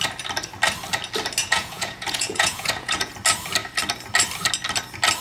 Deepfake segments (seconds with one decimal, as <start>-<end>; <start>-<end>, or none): 1.4-3.1